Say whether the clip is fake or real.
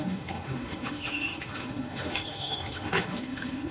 fake